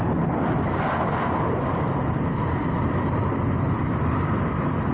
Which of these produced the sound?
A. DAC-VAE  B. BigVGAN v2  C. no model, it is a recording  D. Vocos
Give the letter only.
C